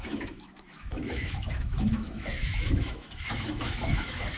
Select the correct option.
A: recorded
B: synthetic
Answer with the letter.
B